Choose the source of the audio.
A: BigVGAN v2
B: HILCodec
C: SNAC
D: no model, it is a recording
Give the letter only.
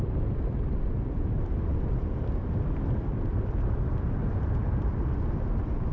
A